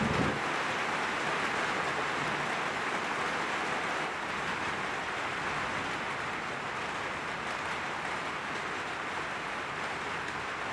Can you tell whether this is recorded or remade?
recorded